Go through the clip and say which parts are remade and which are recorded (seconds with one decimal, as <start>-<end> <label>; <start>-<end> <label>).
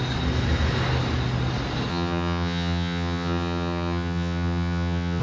0.0-1.9 recorded; 1.9-5.2 remade